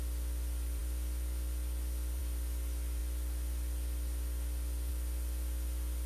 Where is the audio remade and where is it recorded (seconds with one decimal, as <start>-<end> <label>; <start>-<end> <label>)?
0.0-6.1 recorded